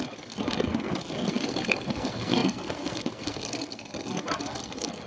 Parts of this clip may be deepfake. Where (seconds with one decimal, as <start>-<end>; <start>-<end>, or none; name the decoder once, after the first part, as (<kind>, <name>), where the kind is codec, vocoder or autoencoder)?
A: 0.0-5.1 (codec, SNAC)